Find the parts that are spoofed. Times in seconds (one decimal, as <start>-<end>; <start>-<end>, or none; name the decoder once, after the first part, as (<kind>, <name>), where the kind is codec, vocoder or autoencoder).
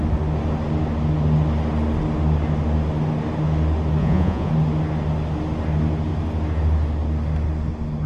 4.0-4.5 (vocoder, Vocos)